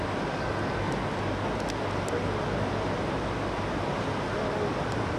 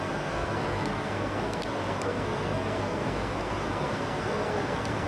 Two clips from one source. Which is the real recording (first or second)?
first